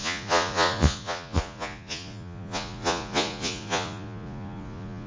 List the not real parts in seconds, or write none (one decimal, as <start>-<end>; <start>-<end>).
0.0-5.1